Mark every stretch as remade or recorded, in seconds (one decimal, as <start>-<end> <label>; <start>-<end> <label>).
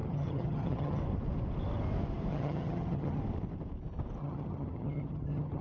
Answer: 0.0-1.0 remade; 1.0-2.3 recorded; 2.3-3.2 remade; 3.2-4.2 recorded; 4.2-5.6 remade